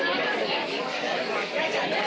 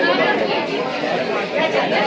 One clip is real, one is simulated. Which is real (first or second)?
second